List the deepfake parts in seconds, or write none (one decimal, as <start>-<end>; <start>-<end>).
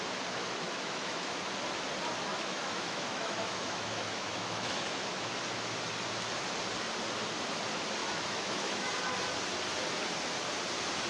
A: 0.4-1.4; 2.3-5.3; 8.0-8.9